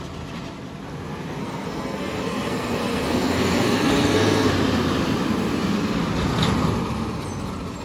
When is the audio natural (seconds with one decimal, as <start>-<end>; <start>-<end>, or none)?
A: 0.0-1.4; 4.5-7.8

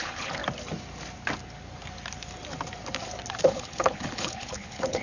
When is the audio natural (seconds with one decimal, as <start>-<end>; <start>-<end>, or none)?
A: 0.4-3.4

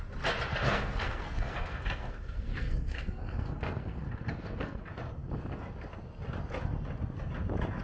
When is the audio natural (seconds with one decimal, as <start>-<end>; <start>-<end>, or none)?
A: 0.0-0.5; 4.8-7.8

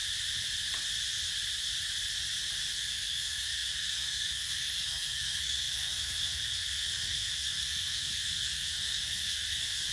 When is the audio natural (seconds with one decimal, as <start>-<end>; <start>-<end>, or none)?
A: 0.0-2.7

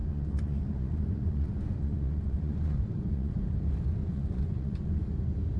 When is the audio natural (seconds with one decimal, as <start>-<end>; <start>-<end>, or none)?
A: 3.4-4.0; 5.0-5.6

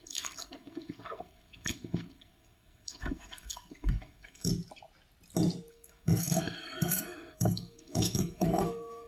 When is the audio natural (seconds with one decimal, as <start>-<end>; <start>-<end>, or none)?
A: 4.5-5.7